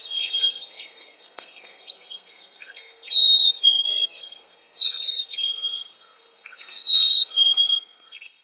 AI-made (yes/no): yes